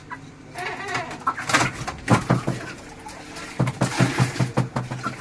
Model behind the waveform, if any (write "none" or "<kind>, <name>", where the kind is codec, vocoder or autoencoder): none